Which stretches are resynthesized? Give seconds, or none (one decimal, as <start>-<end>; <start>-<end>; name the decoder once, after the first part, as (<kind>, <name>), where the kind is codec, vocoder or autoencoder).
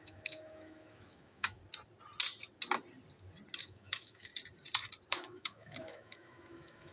0.0-1.6 (autoencoder, DAC-VAE); 3.6-4.3; 5.1-6.9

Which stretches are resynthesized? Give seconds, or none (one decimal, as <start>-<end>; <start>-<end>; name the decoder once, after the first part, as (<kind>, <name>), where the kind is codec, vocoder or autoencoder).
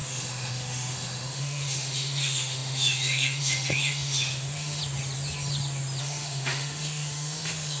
0.0-4.8 (autoencoder, DAC-VAE); 6.0-7.8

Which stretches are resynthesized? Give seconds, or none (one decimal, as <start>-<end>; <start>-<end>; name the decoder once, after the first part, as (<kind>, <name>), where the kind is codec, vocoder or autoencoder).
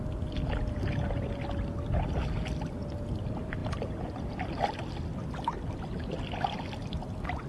none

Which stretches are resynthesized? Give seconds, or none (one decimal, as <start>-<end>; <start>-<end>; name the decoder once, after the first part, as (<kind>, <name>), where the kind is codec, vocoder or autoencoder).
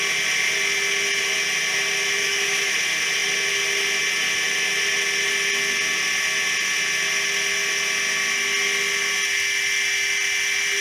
2.2-2.7 (autoencoder, DAC-VAE)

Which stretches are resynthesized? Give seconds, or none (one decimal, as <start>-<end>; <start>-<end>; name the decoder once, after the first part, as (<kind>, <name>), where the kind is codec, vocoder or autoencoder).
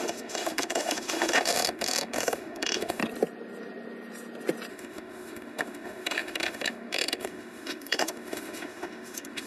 0.0-3.0 (autoencoder, DAC-VAE); 4.7-9.5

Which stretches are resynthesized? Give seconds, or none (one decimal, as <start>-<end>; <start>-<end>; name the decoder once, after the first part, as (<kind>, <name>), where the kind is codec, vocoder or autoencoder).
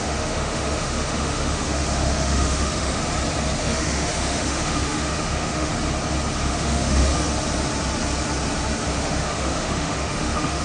0.0-3.0 (autoencoder, DAC-VAE); 3.6-5.7; 6.4-7.1; 8.9-10.6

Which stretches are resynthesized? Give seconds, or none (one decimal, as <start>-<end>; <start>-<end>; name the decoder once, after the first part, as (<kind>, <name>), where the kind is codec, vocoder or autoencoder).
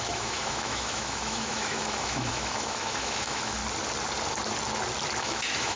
0.0-3.6 (autoencoder, DAC-VAE); 5.2-5.8